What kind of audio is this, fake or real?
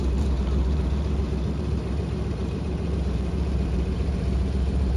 fake